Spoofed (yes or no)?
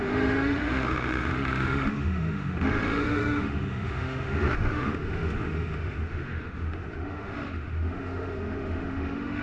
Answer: yes